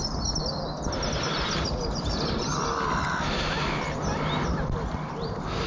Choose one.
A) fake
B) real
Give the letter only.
B